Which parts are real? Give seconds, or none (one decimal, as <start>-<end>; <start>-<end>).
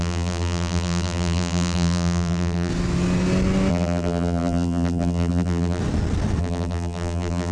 2.7-3.7; 5.8-6.4